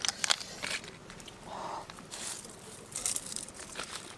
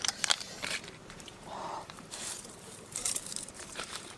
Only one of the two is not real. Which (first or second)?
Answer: second